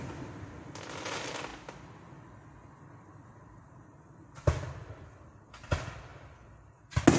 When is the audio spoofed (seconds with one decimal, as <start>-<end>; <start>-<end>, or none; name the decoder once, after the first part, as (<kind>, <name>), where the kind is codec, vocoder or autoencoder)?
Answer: none